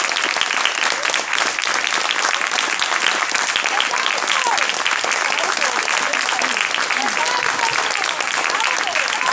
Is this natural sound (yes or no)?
yes